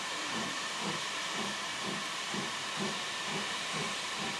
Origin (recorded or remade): remade